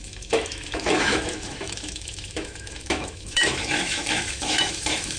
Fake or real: fake